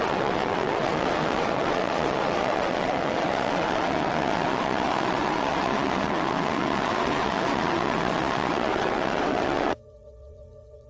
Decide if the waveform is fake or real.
fake